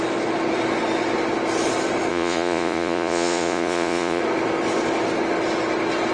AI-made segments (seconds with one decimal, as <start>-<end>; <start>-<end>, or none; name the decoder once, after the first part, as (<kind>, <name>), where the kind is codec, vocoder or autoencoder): 2.1-4.2 (vocoder, Vocos)